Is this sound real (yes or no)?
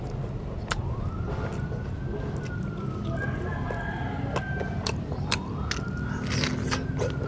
yes